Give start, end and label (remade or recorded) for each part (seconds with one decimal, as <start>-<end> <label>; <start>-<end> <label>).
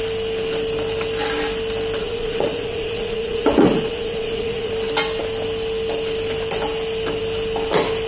0.0-2.0 recorded; 2.0-4.7 remade; 4.7-8.1 recorded